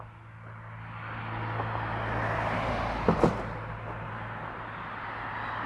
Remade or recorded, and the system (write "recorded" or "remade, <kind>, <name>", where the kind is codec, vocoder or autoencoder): recorded